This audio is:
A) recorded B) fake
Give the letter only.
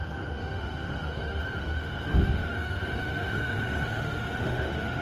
B